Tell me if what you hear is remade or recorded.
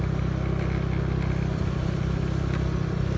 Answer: recorded